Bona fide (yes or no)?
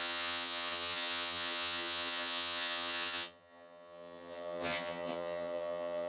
no